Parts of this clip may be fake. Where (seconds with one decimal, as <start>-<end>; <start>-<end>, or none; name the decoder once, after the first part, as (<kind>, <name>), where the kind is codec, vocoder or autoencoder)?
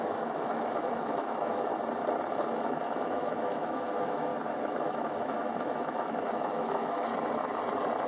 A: 0.0-1.7 (autoencoder, DAC-VAE); 2.3-4.3; 4.8-7.1